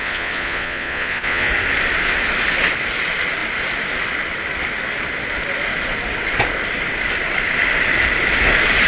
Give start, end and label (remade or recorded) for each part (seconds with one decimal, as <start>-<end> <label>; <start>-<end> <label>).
0.0-1.5 remade; 1.5-8.9 recorded